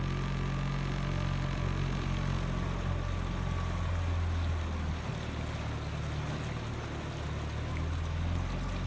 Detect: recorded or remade recorded